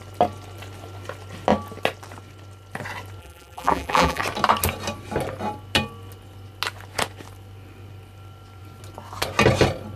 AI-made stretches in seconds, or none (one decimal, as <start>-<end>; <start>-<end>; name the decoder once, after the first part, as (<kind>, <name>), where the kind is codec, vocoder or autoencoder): 3.2-4.2 (vocoder, BigVGAN v2)